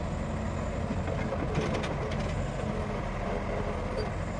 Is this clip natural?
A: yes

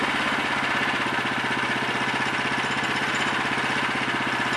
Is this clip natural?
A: yes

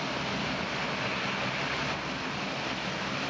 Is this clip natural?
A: yes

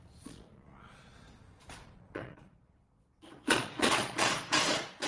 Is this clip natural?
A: no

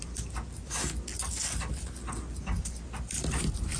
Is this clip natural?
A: yes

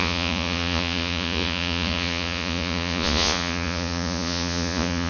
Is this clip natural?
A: no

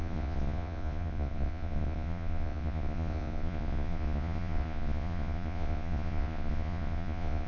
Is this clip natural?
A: no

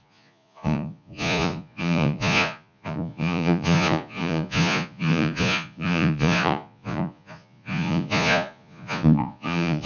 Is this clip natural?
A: no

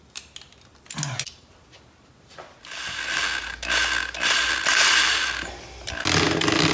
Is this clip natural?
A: yes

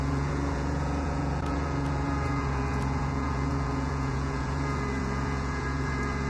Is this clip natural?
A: no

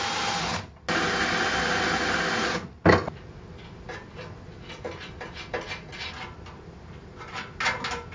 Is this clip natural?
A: yes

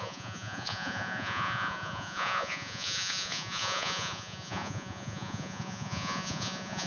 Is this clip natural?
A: no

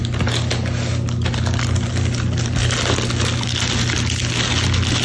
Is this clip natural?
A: yes